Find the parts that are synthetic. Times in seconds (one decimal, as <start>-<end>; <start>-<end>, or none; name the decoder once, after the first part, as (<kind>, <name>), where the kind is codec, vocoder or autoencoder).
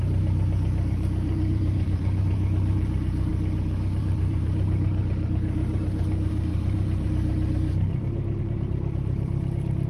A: 0.0-3.3 (vocoder, BigVGAN v2); 4.0-9.9